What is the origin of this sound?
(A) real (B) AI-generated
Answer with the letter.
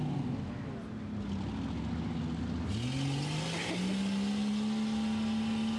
A